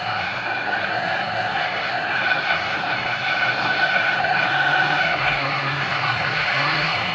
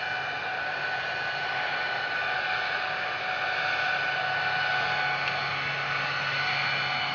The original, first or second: second